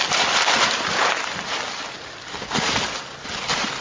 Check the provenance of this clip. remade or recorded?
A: recorded